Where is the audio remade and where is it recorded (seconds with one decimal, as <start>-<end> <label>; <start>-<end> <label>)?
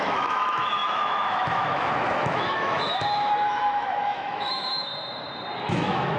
0.0-4.9 remade; 4.9-5.7 recorded; 5.7-6.2 remade